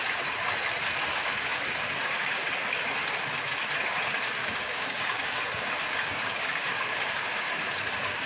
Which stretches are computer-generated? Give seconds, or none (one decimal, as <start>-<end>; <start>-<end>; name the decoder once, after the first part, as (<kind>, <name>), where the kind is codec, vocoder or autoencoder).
1.1-2.5 (codec, DAC); 4.4-7.5